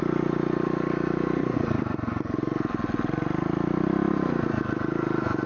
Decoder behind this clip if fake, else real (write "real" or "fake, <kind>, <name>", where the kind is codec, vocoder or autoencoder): real